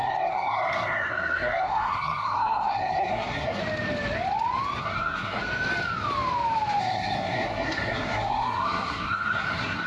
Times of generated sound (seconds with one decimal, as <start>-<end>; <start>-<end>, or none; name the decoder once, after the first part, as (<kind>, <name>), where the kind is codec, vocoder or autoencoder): 0.0-3.6 (codec, SNAC); 4.8-5.4; 6.8-9.9